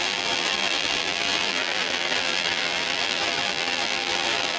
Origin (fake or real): fake